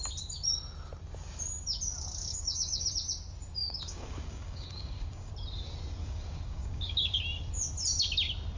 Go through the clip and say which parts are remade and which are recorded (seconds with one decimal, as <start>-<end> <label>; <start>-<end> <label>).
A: 0.0-2.3 recorded; 2.3-2.9 remade; 2.9-3.6 recorded; 3.6-5.3 remade; 5.3-6.0 recorded; 6.0-7.2 remade; 7.2-8.6 recorded